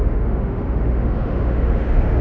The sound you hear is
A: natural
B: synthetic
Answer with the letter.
B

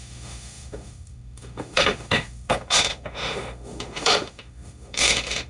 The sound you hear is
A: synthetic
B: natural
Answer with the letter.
A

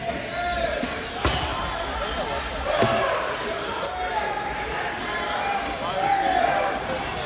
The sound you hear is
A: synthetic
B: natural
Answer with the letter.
B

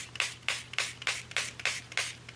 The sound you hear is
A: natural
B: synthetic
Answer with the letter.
A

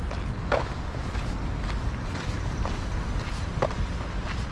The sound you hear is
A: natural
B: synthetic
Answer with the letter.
A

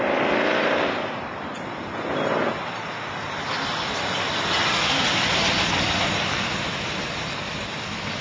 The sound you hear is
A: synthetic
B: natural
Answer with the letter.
B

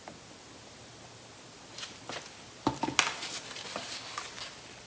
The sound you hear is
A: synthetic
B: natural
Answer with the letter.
B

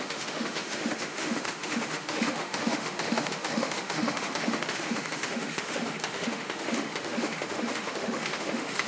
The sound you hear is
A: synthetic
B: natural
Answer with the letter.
A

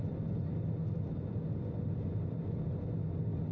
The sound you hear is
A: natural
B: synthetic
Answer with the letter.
A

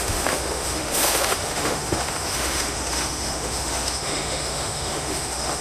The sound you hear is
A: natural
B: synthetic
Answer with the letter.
B